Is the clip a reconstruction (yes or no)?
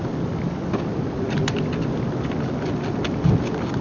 no